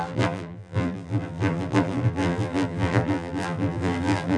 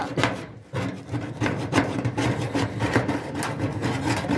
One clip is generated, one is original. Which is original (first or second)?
second